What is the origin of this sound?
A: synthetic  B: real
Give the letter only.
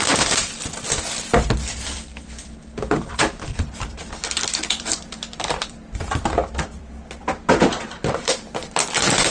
A